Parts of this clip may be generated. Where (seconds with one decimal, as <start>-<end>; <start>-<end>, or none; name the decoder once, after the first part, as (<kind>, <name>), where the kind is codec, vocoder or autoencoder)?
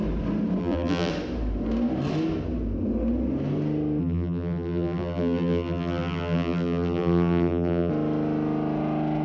0.6-1.1 (vocoder, BigVGAN v2); 4.0-7.9